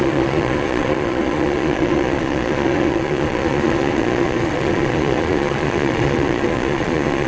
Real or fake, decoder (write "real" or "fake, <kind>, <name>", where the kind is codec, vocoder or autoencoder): fake, vocoder, Vocos